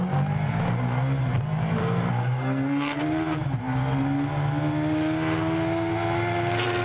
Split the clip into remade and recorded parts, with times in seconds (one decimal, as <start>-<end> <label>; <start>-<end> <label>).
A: 0.0-1.8 recorded; 1.8-3.0 remade; 3.0-6.8 recorded